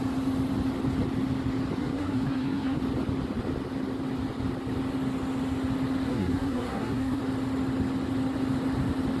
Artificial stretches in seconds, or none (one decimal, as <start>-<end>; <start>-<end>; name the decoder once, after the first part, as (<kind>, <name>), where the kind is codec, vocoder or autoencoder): 1.8-2.8 (codec, SNAC); 6.1-7.2